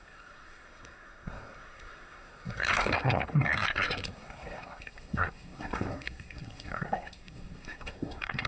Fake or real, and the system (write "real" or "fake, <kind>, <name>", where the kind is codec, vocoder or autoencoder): fake, codec, SNAC